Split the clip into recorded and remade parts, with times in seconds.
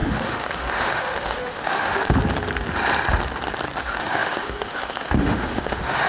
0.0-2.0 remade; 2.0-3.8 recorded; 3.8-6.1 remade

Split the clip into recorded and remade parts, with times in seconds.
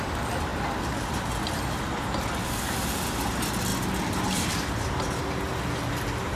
0.0-6.4 recorded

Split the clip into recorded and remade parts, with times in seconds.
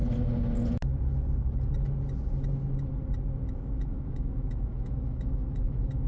0.0-3.5 recorded; 3.5-6.1 remade